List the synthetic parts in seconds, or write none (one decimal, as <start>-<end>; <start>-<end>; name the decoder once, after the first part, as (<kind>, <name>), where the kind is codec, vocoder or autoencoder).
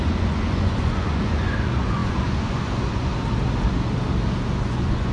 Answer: 0.0-3.1 (vocoder, Vocos); 4.6-5.1